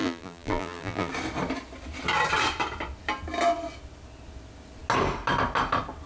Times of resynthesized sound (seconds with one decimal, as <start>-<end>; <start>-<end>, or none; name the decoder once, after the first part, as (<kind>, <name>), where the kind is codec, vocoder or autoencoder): 0.0-1.1 (vocoder, BigVGAN v2)